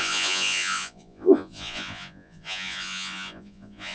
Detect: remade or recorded remade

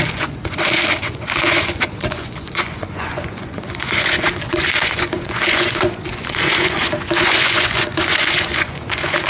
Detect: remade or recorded remade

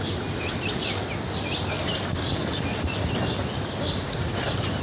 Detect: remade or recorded recorded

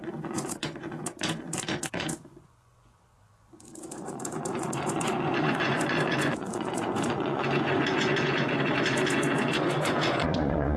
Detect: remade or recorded remade